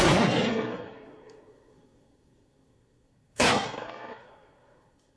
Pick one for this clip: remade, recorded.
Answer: remade